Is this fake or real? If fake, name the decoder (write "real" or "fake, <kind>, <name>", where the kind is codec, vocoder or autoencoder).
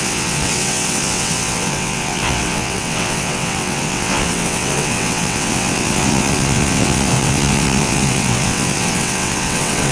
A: fake, vocoder, WaveNeXt